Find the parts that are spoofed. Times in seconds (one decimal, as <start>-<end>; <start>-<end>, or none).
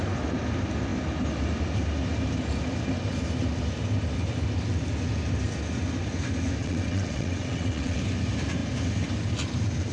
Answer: 6.6-8.0